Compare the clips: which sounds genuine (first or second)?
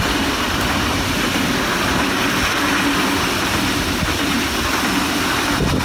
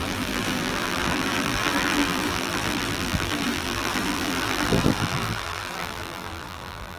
first